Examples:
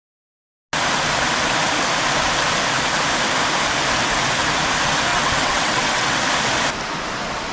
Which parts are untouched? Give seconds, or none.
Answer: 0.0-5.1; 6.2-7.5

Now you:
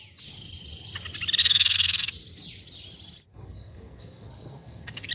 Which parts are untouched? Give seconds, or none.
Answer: 0.0-1.4; 2.1-3.3

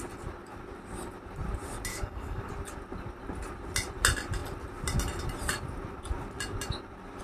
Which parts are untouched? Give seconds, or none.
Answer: 0.0-1.9; 2.5-7.2

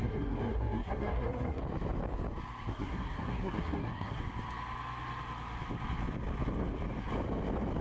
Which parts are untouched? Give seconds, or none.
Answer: 1.6-2.7; 4.2-7.8

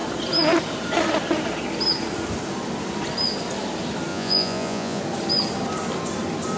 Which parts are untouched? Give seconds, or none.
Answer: 0.0-4.1; 5.0-6.6